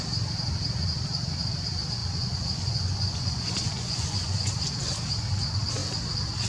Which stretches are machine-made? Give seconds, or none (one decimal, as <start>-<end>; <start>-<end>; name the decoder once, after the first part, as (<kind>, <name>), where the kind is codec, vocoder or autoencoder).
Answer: 2.0-4.5 (vocoder, Vocos)